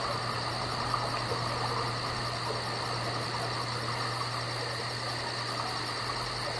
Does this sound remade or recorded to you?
recorded